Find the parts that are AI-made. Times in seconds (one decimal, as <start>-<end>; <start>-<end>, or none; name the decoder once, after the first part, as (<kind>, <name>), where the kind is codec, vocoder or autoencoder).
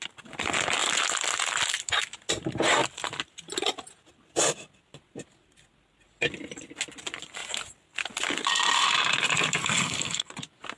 9.6-10.3 (codec, SNAC)